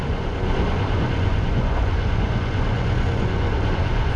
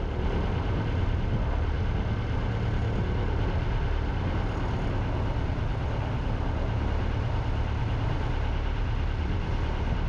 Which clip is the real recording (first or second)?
second